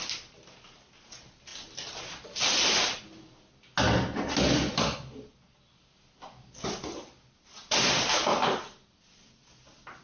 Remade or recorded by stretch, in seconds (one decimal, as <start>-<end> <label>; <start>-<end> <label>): 0.0-10.0 recorded